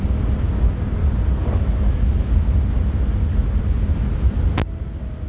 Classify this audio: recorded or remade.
recorded